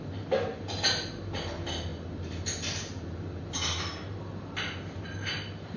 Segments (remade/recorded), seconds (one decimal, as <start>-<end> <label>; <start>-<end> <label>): 0.0-5.8 recorded